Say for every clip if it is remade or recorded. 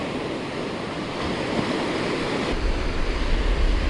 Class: recorded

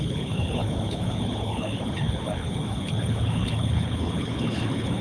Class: remade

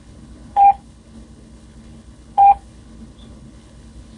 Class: remade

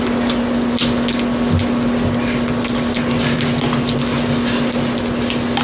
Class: recorded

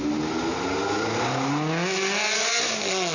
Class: recorded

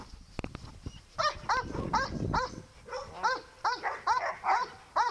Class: recorded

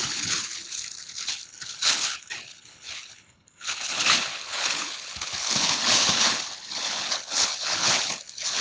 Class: remade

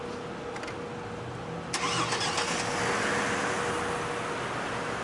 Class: recorded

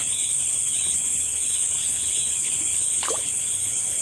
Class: remade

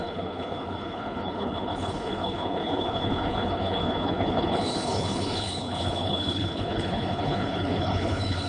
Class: remade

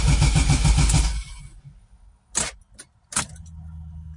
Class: recorded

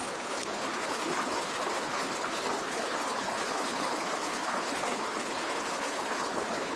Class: remade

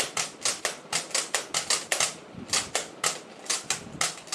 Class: recorded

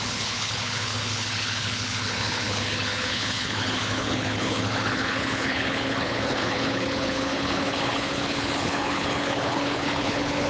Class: remade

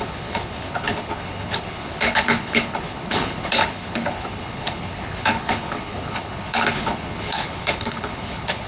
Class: remade